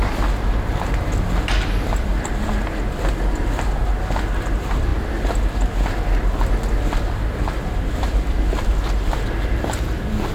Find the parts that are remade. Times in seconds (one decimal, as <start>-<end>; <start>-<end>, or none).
none